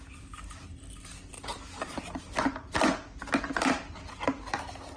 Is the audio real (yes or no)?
yes